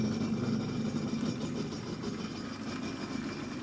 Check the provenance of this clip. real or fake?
real